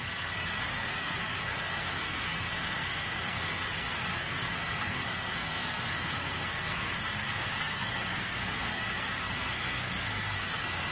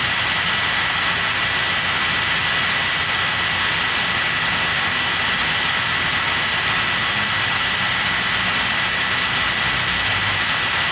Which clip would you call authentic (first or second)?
second